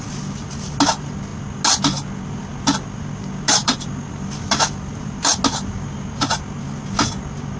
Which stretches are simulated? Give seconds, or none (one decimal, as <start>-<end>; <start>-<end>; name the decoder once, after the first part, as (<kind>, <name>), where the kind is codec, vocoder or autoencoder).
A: 3.6-5.4 (vocoder, BigVGAN v2)

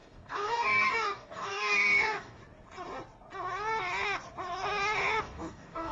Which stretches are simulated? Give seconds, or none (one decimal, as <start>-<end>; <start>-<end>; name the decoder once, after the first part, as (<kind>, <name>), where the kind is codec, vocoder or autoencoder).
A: 0.0-2.4 (codec, DAC); 5.2-5.9